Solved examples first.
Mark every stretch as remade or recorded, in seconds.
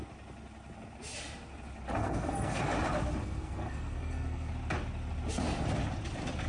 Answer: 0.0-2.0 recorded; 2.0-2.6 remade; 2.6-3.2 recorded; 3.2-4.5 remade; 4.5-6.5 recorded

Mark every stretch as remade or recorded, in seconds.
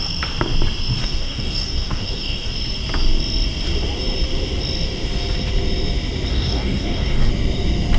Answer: 0.0-1.0 recorded; 1.0-2.5 remade; 2.5-6.3 recorded; 6.3-7.3 remade; 7.3-8.0 recorded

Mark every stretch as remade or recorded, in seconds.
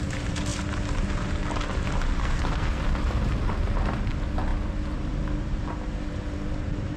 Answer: 0.0-2.2 recorded; 2.2-2.8 remade; 2.8-7.0 recorded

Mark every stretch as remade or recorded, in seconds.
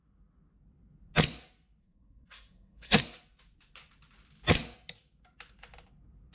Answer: 0.0-1.8 recorded; 1.8-3.0 remade; 3.0-6.3 recorded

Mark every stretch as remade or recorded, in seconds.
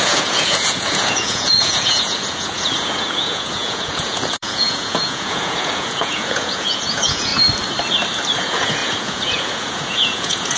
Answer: 0.0-7.3 remade; 7.3-8.4 recorded; 8.4-10.6 remade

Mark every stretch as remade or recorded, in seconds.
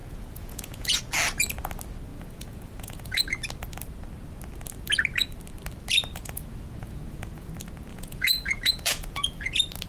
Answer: 0.0-1.0 remade; 1.0-2.1 recorded; 2.1-3.2 remade; 3.2-6.1 recorded; 6.1-7.5 remade; 7.5-7.9 recorded; 7.9-9.5 remade; 9.5-9.9 recorded